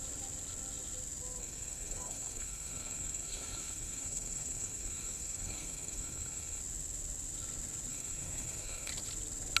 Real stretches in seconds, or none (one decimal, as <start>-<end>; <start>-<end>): 0.0-1.4; 6.6-7.9; 8.9-9.6